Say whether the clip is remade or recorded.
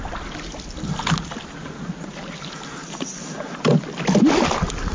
recorded